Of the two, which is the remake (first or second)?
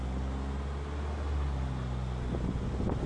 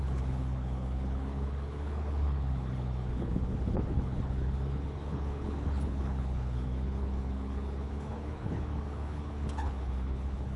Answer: second